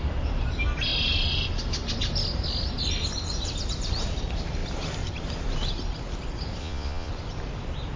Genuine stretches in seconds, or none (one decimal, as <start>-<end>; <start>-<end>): 0.0-6.6; 7.1-8.0